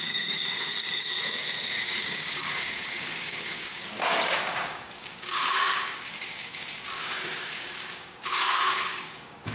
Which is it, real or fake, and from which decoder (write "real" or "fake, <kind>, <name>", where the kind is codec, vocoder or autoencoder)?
fake, codec, DAC